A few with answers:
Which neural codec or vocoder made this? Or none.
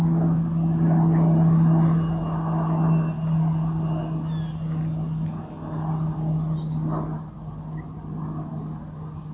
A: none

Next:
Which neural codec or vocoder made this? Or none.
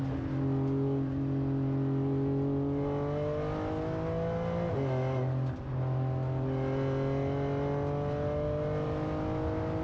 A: none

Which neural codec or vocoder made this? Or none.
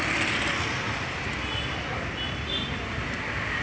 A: none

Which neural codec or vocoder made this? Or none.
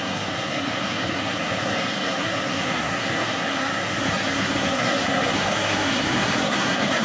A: codec, SNAC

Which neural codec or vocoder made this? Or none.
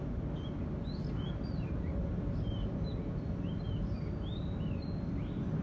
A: none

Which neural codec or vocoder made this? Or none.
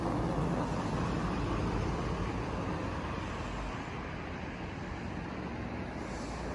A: none